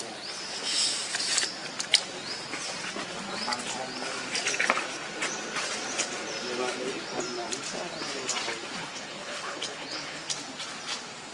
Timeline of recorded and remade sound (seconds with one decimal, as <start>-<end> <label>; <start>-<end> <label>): 0.0-8.8 recorded; 8.8-10.3 remade; 10.3-11.3 recorded